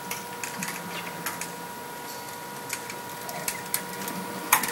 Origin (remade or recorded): recorded